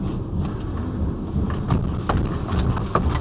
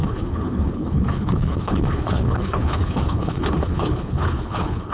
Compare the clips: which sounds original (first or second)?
first